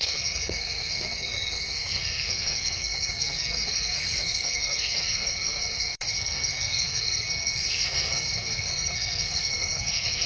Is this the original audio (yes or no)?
no